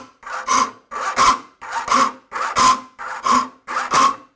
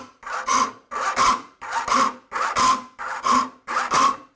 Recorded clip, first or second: first